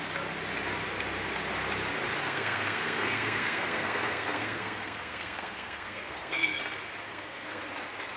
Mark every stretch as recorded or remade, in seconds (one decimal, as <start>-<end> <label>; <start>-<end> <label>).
0.0-2.2 recorded; 2.2-6.6 remade; 6.6-7.1 recorded; 7.1-7.6 remade; 7.6-8.2 recorded